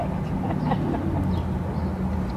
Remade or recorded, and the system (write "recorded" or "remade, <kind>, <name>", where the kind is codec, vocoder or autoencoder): recorded